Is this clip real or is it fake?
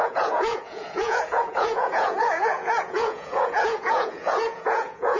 fake